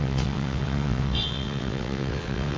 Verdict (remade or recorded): remade